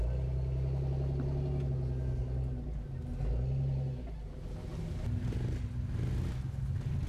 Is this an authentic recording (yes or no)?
yes